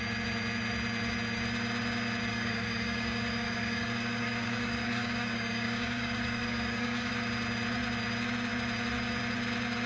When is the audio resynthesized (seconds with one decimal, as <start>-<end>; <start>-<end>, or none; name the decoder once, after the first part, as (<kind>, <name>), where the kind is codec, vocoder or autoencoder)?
2.3-7.1 (codec, DAC)